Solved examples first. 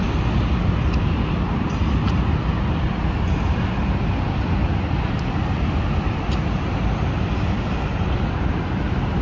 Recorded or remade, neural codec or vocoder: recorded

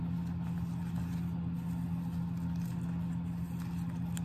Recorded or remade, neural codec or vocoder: recorded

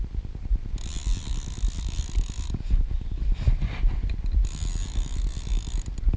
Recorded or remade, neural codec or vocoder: recorded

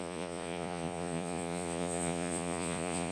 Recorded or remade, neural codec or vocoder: remade, vocoder, Vocos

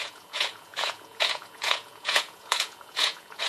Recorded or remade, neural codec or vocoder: remade, vocoder, Vocos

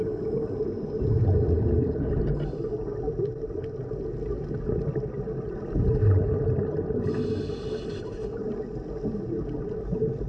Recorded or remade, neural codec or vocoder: recorded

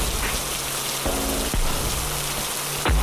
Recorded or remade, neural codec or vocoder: recorded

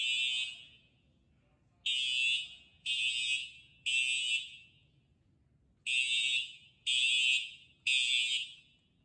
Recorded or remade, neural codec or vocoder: recorded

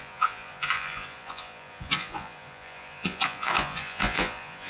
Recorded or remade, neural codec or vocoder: remade, vocoder, Vocos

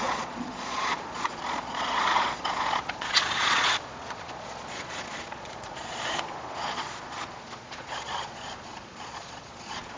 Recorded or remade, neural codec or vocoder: remade, vocoder, Vocos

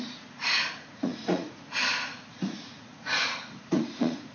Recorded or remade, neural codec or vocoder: remade, vocoder, Vocos